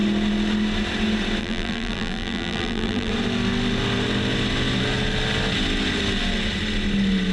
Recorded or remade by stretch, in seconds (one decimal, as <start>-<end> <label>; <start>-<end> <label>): 0.0-1.4 recorded; 1.4-3.1 remade; 3.1-7.3 recorded